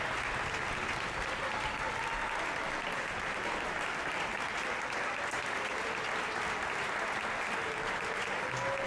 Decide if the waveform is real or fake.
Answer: real